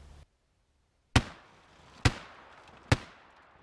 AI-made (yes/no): no